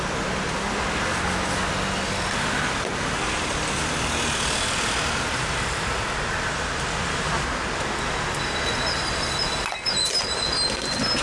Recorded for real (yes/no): yes